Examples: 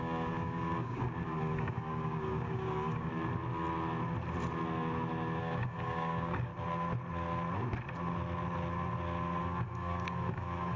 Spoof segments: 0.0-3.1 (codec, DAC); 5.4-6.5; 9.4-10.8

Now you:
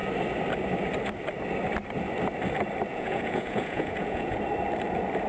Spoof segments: 2.9-4.4 (vocoder, Vocos)